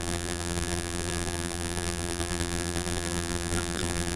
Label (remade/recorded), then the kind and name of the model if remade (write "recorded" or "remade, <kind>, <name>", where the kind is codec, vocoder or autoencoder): remade, vocoder, BigVGAN v2